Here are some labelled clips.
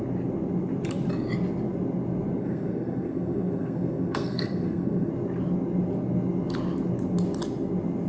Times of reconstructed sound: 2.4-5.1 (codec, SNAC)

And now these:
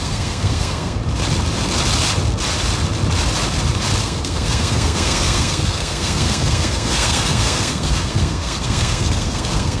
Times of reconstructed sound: 0.0-1.0 (codec, SNAC); 4.0-9.8

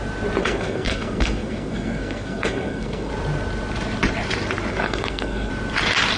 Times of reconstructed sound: 0.4-3.1 (codec, SNAC); 4.7-5.5

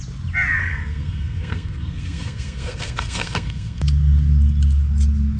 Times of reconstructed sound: 0.6-3.8 (codec, SNAC)

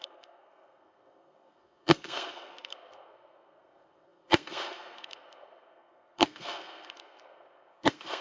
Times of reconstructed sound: 0.0-8.2 (codec, SNAC)

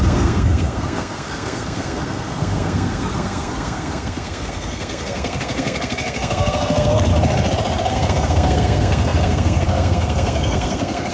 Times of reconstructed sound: 0.0-7.1 (codec, SNAC); 7.9-11.1